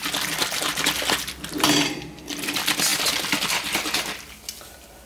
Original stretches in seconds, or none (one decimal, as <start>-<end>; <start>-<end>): 0.0-5.1